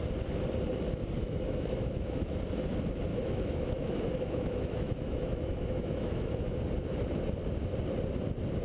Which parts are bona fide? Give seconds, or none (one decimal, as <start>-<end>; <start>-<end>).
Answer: 0.0-1.2; 2.4-3.1; 6.6-8.6